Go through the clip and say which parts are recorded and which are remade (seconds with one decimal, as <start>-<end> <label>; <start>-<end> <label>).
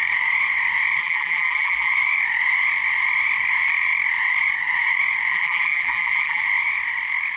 0.0-1.0 recorded; 1.0-1.9 remade; 1.9-5.3 recorded; 5.3-6.4 remade; 6.4-7.4 recorded